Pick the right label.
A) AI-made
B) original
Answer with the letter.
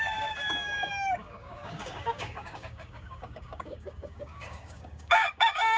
A